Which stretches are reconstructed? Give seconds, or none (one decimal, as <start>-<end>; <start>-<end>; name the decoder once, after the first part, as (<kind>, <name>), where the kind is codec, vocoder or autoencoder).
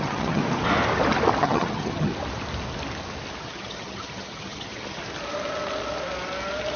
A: 0.0-0.4 (vocoder, HiFi-GAN); 1.4-2.1; 3.4-5.0